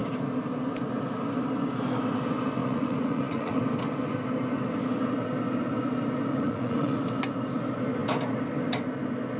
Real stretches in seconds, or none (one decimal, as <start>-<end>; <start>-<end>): 0.0-2.6; 3.6-6.3; 7.0-9.4